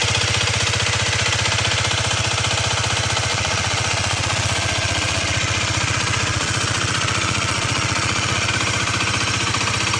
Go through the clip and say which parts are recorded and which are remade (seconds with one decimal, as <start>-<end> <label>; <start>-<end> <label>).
0.0-3.3 recorded; 3.3-8.5 remade; 8.5-10.0 recorded